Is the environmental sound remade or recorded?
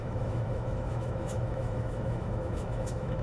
remade